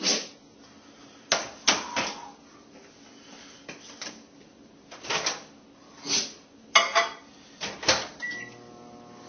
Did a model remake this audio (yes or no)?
no